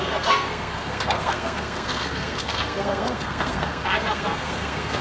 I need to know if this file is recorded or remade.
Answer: remade